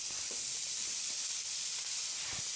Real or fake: real